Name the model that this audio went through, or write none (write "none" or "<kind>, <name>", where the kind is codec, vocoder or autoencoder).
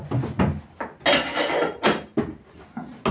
none